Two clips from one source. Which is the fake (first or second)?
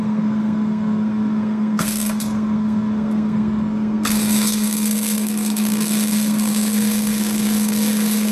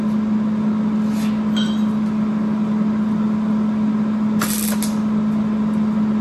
first